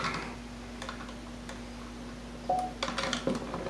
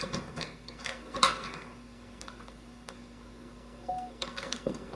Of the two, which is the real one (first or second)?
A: first